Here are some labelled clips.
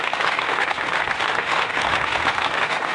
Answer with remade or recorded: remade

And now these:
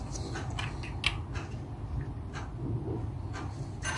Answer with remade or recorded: recorded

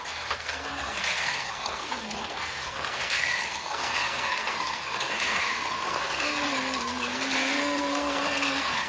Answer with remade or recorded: remade